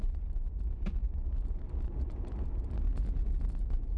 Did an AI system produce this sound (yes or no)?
no